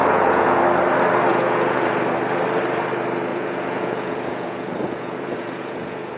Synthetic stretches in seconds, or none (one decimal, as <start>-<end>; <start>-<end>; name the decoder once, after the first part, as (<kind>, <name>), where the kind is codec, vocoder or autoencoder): 0.0-0.6 (vocoder, Vocos); 1.3-1.9; 3.3-6.2